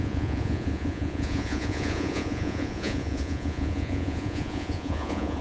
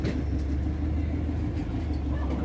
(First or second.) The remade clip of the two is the first